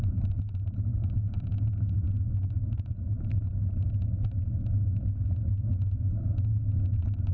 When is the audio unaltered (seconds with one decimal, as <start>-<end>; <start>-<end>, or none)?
0.0-7.3